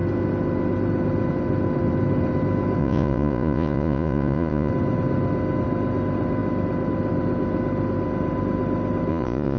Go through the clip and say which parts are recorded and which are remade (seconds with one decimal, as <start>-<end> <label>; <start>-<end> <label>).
0.0-2.8 recorded; 2.8-4.7 remade; 4.7-9.1 recorded; 9.1-9.6 remade

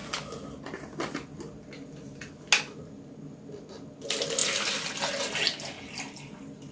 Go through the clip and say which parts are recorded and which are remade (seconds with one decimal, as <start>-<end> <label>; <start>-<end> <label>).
0.0-6.7 recorded

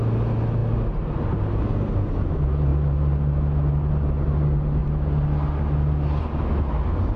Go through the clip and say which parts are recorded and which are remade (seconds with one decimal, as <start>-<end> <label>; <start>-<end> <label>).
0.0-7.2 recorded